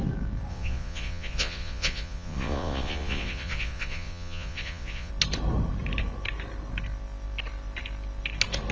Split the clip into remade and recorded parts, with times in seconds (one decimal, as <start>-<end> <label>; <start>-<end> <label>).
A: 0.0-0.5 recorded; 0.5-5.1 remade; 5.1-8.7 recorded